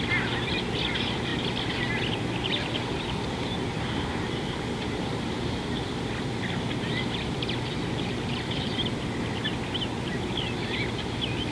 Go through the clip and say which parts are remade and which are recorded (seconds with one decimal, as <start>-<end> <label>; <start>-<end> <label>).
0.0-11.5 recorded